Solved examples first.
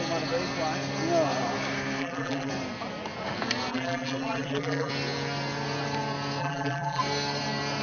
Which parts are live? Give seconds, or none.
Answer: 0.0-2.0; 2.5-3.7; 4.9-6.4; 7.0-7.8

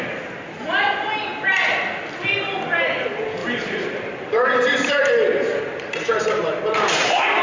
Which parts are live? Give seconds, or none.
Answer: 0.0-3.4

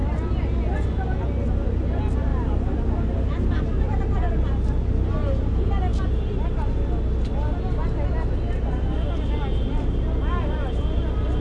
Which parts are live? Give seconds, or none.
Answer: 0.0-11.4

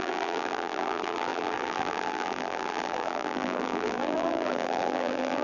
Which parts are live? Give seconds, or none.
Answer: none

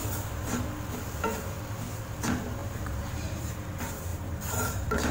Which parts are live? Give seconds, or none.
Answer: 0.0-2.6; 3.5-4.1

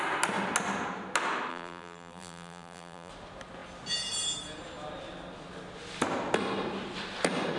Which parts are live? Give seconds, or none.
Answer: 0.0-1.5; 3.1-7.6

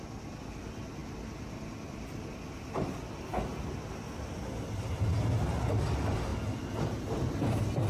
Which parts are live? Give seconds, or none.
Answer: 0.0-7.9